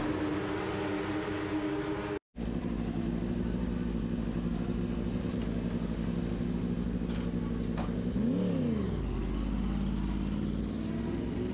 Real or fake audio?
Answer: real